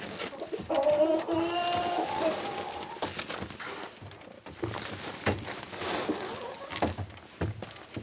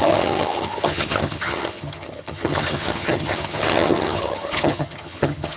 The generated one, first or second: second